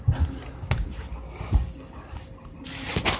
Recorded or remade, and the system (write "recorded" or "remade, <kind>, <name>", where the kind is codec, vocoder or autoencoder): recorded